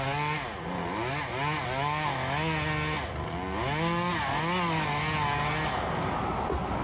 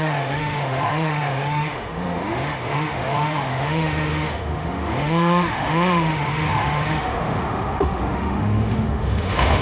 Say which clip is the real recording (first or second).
first